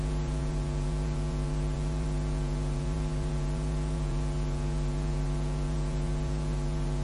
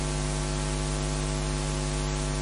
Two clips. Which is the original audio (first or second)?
second